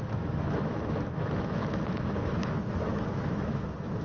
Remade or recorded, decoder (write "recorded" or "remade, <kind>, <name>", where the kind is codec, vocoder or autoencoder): remade, autoencoder, DAC-VAE